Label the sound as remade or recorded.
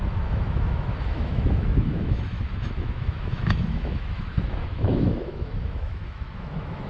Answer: remade